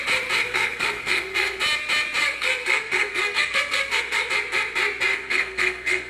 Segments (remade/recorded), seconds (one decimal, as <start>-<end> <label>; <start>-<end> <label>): 0.0-0.4 recorded; 0.4-1.6 remade; 1.6-2.2 recorded; 2.2-4.3 remade; 4.3-5.1 recorded; 5.1-6.1 remade